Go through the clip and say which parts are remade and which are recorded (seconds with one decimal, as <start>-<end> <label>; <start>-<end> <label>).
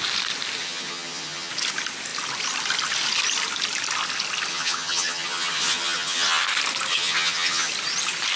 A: 0.0-0.6 recorded; 0.6-1.5 remade; 1.5-4.5 recorded; 4.5-6.4 remade; 6.4-6.9 recorded; 6.9-7.7 remade; 7.7-8.4 recorded